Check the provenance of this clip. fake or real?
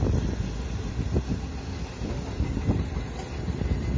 real